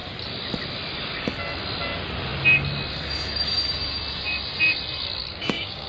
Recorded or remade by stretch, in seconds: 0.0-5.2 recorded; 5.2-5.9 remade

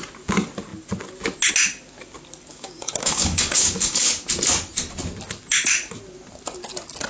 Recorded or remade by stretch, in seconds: 0.0-2.5 recorded; 2.5-4.1 remade; 4.1-7.1 recorded

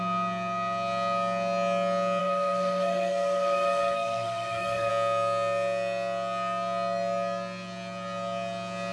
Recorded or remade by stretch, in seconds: 0.0-2.2 recorded; 2.2-4.9 remade; 4.9-8.9 recorded

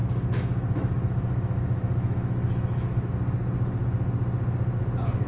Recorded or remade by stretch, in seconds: 0.0-3.1 remade; 3.1-5.3 recorded

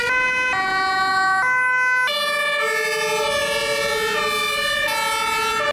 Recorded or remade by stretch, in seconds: 0.0-5.7 recorded

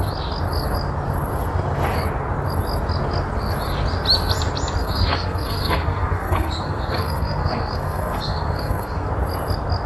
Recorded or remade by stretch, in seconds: 0.0-4.8 recorded; 4.8-9.1 remade; 9.1-9.9 recorded